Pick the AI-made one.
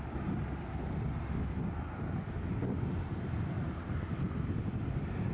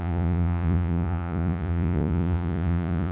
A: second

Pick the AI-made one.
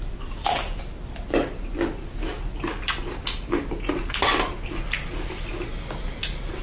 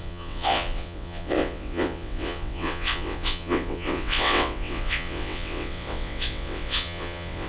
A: second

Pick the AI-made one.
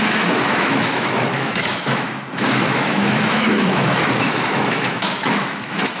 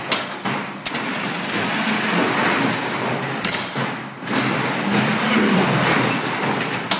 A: first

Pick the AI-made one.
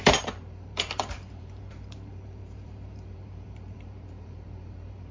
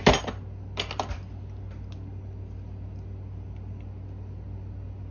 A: first